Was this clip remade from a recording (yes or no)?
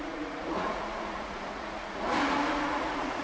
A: yes